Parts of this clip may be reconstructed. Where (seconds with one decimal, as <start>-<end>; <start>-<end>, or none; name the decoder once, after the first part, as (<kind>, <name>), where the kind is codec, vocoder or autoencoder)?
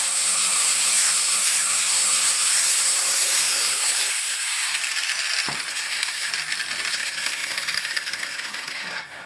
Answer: 0.0-4.8 (codec, SNAC); 5.7-6.3; 6.9-9.3